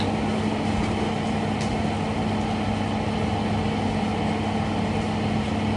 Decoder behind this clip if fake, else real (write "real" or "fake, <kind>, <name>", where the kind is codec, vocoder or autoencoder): real